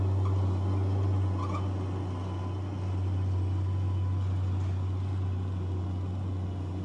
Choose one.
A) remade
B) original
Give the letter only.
B